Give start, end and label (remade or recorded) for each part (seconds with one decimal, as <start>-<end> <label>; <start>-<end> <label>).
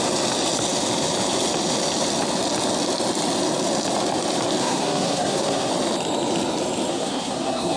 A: 0.0-4.6 recorded; 4.6-5.7 remade; 5.7-6.9 recorded; 6.9-7.8 remade